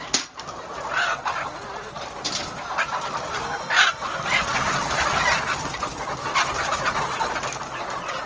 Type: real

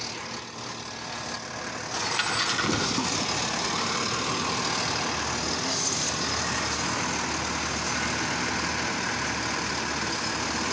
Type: real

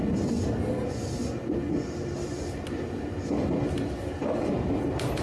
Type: real